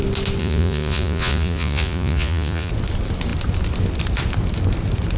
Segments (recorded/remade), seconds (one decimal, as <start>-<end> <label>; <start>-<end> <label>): 0.0-0.4 recorded; 0.4-2.7 remade; 2.7-5.2 recorded